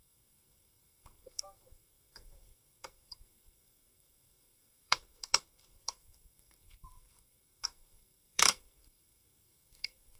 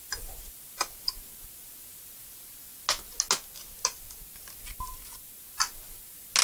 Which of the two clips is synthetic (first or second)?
first